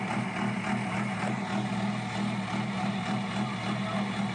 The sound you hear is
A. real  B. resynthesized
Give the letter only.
A